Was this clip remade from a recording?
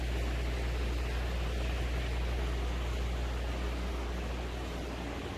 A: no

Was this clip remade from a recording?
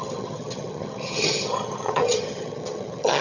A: yes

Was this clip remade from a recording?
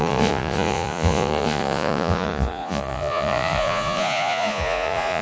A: yes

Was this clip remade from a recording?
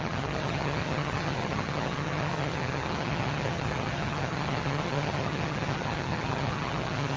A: yes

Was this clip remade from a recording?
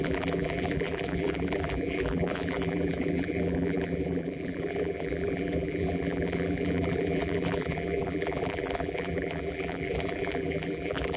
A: yes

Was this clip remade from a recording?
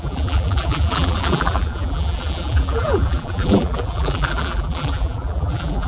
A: yes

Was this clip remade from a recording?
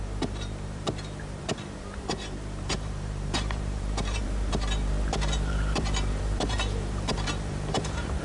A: yes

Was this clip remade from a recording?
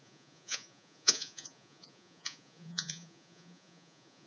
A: yes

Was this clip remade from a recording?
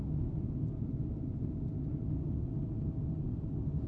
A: no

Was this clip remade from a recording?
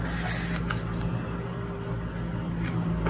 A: no